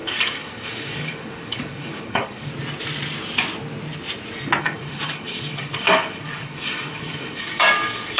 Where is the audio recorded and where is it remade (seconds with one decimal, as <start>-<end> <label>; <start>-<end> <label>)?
0.0-2.5 remade; 2.5-4.6 recorded; 4.6-8.2 remade